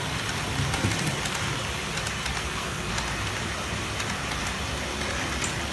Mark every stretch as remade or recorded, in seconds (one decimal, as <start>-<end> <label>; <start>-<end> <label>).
0.0-2.3 recorded; 2.3-2.9 remade; 2.9-5.7 recorded